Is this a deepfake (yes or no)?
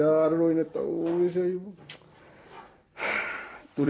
yes